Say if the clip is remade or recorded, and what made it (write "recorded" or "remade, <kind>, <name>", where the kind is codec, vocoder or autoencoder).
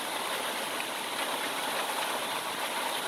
recorded